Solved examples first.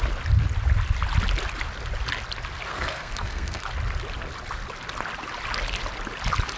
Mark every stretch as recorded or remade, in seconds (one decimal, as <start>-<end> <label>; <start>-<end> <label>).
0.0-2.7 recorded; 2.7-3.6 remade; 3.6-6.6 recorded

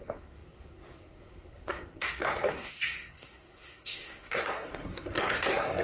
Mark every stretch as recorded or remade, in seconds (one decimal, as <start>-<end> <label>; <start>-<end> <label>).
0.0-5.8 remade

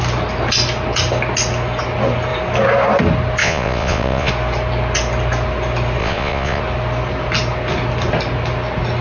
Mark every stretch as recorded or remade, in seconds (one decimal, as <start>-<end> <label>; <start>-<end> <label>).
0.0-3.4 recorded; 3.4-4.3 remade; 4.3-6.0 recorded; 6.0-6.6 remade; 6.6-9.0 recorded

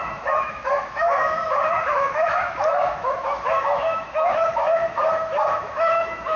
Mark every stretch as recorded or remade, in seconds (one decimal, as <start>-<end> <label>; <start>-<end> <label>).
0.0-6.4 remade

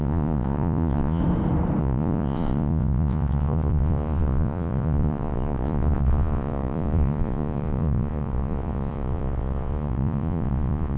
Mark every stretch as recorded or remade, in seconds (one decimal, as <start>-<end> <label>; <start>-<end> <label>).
0.0-1.2 remade; 1.2-1.8 recorded; 1.8-11.0 remade